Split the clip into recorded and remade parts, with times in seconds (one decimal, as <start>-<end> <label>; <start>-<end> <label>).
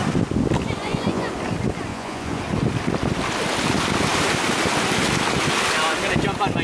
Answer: 0.0-0.8 recorded; 0.8-1.3 remade; 1.3-1.9 recorded; 1.9-2.4 remade; 2.4-6.6 recorded